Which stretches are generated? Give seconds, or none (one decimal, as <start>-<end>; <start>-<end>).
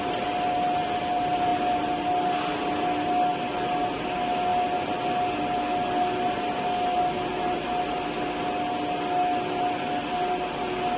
none